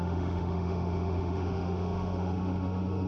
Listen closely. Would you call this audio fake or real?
fake